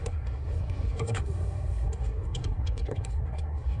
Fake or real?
fake